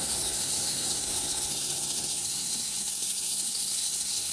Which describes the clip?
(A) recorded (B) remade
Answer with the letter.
B